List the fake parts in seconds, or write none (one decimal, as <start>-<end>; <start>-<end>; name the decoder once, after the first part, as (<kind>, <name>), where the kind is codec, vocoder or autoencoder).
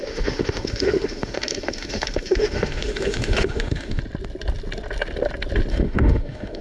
0.0-4.0 (autoencoder, DAC-VAE); 5.7-6.6